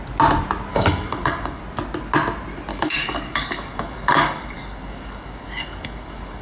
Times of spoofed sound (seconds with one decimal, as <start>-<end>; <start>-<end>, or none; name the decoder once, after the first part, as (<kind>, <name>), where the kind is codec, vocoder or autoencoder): 0.7-1.6 (codec, DAC); 2.7-6.4